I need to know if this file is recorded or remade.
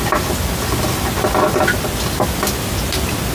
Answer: recorded